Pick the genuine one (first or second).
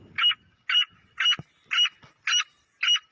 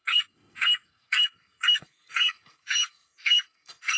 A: first